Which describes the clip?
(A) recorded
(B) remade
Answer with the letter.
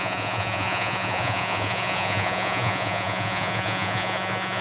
B